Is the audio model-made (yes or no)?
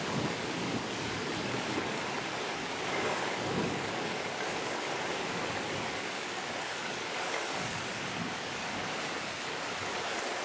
yes